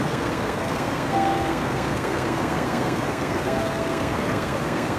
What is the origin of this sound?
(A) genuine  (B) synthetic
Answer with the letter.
B